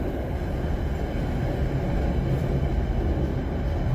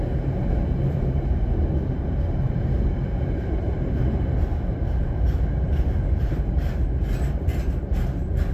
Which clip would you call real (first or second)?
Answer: first